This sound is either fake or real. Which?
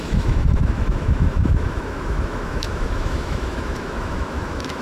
fake